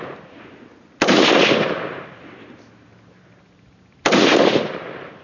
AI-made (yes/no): no